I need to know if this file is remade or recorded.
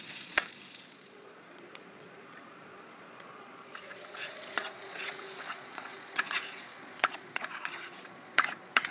remade